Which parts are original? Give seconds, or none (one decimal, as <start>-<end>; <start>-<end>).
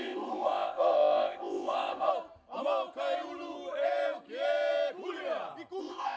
2.1-5.8